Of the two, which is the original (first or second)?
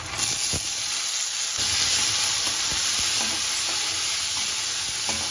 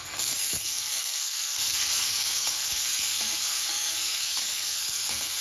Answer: first